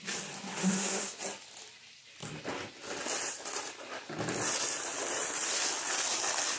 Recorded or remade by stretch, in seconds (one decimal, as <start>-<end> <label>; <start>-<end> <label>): 0.0-0.6 recorded; 0.6-1.2 remade; 1.2-6.6 recorded